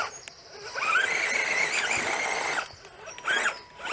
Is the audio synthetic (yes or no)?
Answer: no